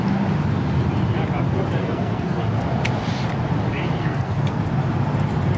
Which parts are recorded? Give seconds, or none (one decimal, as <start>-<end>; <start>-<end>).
0.0-1.8; 2.4-4.0; 4.6-5.6

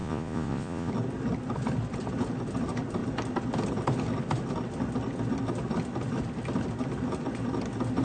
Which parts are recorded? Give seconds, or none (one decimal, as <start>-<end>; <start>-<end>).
0.9-8.0

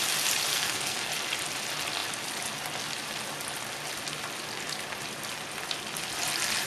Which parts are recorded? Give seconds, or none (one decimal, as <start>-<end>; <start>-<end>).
0.0-0.5; 1.1-6.7

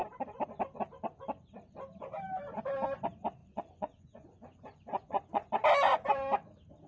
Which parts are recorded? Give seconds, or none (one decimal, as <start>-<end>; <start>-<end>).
0.0-3.4; 5.5-6.9

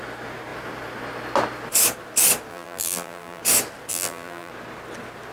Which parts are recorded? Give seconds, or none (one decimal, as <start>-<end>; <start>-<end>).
0.0-2.5; 3.4-3.9; 4.5-5.3

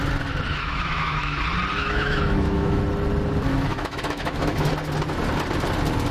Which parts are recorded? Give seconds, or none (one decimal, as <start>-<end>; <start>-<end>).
0.0-0.5; 1.4-1.8; 2.8-3.7; 4.7-6.1